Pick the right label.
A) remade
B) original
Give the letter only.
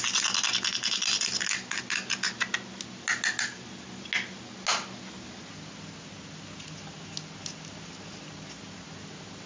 B